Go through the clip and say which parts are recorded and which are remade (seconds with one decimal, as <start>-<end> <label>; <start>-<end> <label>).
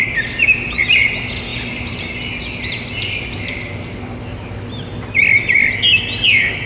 0.0-6.7 recorded